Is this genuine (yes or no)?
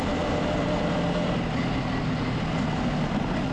yes